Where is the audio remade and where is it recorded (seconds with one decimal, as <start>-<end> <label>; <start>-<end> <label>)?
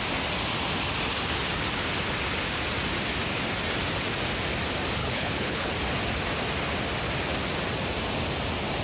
0.0-5.0 recorded; 5.0-5.7 remade; 5.7-8.8 recorded